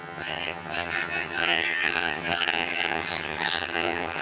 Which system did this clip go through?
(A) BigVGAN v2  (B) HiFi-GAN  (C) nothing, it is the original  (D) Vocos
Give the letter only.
B